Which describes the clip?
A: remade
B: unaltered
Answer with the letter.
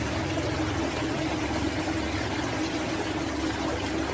B